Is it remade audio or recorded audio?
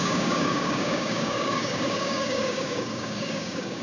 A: remade